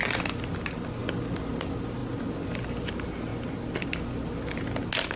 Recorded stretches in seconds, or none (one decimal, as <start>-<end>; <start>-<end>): 0.0-5.2